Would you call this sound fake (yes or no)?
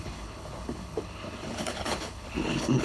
yes